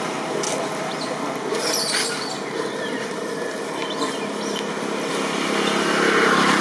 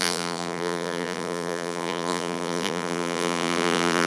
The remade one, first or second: second